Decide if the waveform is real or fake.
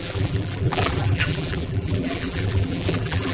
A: fake